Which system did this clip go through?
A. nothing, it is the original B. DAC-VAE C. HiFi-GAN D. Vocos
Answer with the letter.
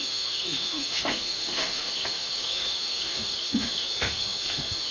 B